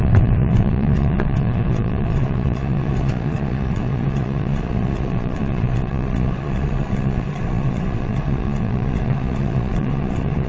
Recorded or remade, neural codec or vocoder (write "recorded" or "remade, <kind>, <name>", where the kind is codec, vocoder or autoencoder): remade, vocoder, WaveNeXt